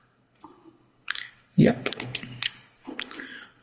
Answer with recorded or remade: remade